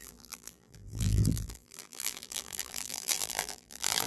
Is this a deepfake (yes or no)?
yes